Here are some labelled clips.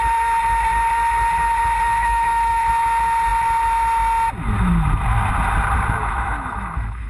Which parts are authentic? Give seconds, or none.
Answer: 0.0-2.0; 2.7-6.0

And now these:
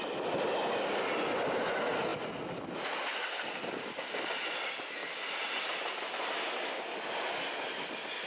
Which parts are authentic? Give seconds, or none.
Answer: 0.0-8.3

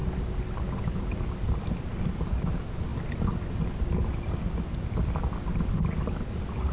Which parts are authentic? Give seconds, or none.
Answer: 0.0-6.7

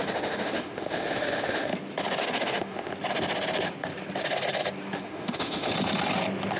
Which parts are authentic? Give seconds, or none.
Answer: 1.7-2.2; 2.9-5.0; 5.7-6.6

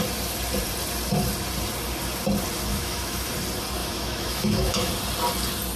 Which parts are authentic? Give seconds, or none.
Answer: 0.0-2.7; 3.3-3.8; 4.9-5.8